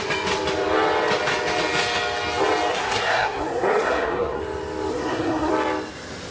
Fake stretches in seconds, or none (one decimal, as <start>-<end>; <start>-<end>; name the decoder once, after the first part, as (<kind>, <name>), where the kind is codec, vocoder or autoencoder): 2.7-4.4 (codec, SNAC); 4.9-5.5